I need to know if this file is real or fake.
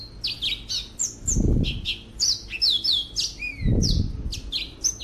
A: real